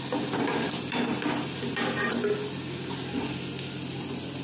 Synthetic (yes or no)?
no